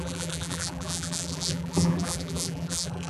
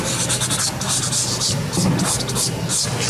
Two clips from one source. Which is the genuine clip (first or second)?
second